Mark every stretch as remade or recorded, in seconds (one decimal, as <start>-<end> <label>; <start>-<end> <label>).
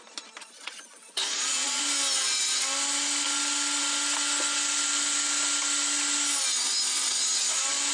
0.0-0.4 recorded; 0.4-1.8 remade; 1.8-7.9 recorded